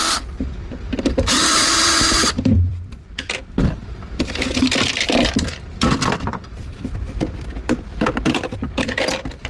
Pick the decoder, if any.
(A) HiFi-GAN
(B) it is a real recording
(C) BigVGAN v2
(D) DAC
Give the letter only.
C